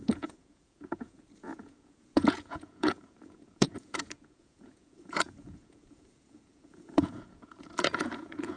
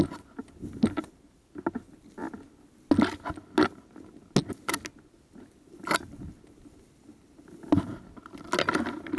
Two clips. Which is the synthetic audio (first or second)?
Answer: first